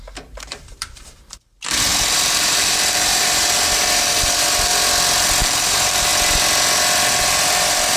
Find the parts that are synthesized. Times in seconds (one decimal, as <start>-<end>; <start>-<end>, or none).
0.0-4.7; 5.4-6.1; 7.1-8.0

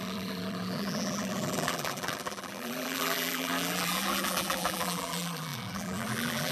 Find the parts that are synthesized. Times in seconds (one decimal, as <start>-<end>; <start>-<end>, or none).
0.0-6.5

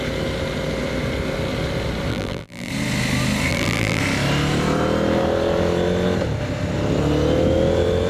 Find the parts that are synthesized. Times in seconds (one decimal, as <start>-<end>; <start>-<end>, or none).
2.1-2.7; 3.5-4.0

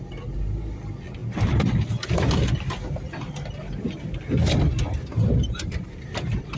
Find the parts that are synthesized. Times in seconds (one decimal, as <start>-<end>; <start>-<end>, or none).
5.1-6.6

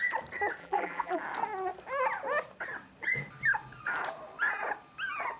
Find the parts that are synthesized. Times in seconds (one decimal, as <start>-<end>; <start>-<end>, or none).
0.6-1.2

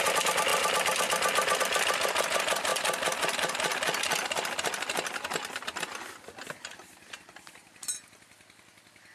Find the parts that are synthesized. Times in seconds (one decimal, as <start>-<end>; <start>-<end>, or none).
none

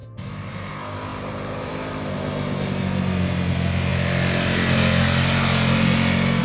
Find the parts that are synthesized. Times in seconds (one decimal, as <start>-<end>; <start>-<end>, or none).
0.0-0.7; 1.1-1.7

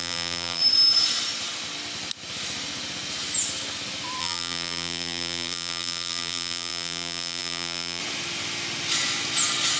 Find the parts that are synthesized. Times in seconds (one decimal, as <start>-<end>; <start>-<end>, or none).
0.0-0.6; 4.2-8.0